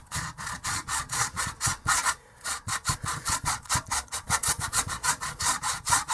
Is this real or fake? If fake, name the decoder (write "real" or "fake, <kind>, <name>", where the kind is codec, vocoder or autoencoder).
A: fake, vocoder, Vocos